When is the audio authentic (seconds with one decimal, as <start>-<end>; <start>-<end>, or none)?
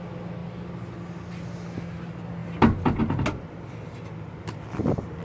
0.0-5.2